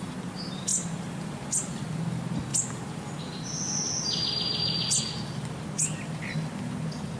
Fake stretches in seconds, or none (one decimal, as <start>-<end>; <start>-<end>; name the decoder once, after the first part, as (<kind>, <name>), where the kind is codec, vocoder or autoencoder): 0.7-2.0 (vocoder, BigVGAN v2); 2.5-3.0